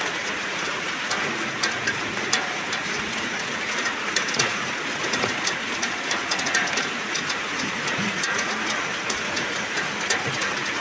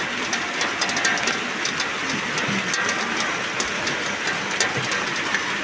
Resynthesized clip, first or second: first